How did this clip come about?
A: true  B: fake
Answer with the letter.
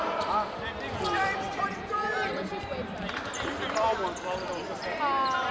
A